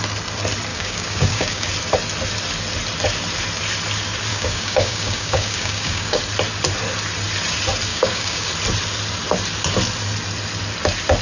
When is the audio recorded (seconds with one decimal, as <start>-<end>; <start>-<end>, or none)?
0.0-0.7; 1.7-4.3; 6.2-7.9; 8.5-11.2